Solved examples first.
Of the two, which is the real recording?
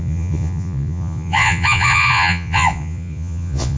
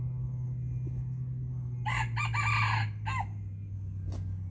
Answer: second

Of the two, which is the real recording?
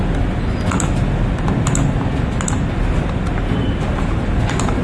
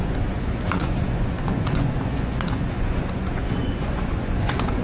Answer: first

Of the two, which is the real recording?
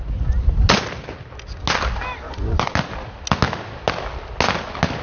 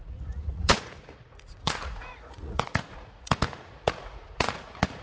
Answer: first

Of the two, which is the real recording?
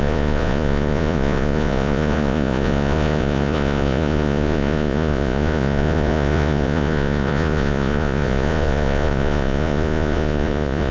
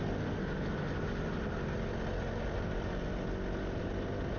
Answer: second